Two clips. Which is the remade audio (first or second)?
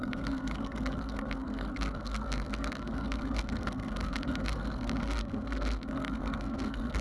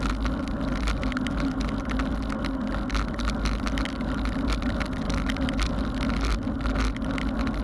first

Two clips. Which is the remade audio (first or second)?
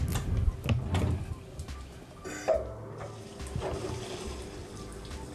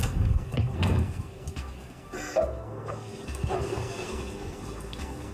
second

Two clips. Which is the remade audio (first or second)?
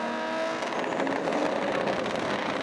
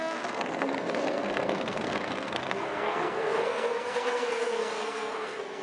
second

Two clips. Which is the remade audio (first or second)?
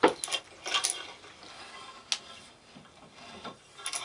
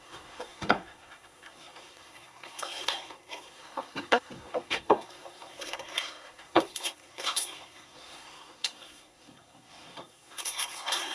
second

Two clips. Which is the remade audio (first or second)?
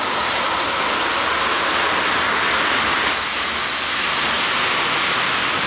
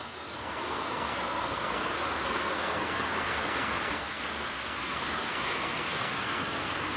second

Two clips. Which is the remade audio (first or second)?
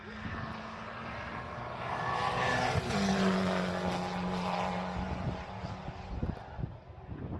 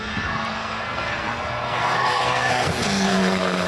second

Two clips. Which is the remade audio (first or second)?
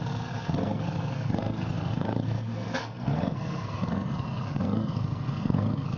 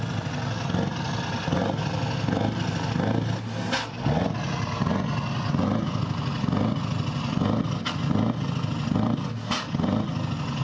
first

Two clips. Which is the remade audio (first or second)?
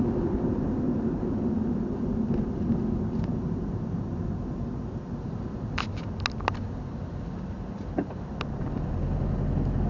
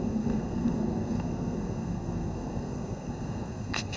second